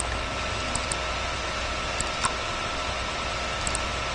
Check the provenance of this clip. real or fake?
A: real